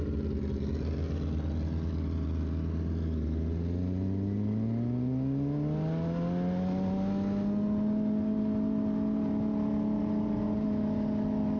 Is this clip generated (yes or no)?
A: no